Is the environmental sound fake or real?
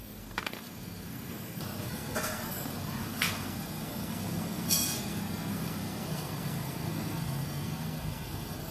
fake